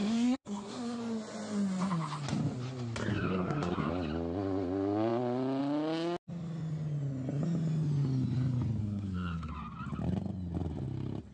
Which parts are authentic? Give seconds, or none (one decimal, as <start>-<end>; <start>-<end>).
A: 1.0-3.1; 3.9-8.8; 9.5-11.3